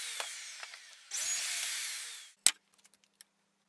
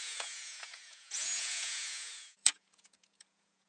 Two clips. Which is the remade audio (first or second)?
second